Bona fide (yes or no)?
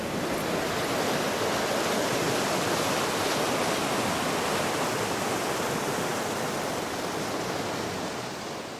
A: yes